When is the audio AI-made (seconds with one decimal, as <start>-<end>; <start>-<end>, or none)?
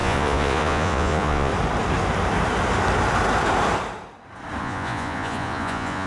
0.0-1.5; 4.6-6.1